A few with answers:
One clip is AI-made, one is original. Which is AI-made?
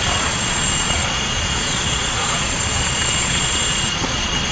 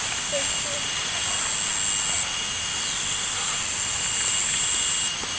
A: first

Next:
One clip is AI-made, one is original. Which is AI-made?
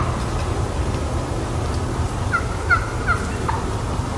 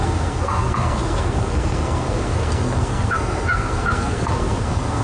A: second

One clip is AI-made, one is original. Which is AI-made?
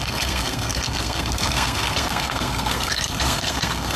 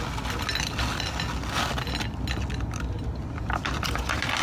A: first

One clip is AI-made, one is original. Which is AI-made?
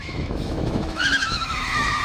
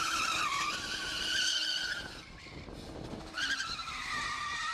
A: first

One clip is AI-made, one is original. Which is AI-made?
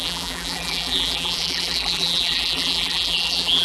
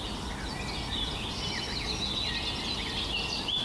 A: first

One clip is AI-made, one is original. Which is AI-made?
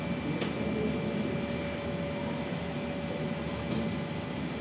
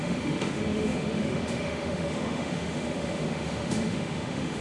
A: second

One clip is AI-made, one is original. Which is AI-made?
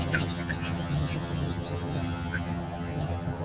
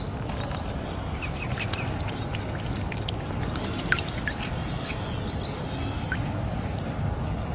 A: first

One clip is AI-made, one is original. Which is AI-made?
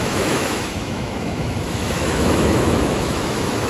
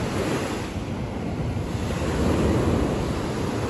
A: first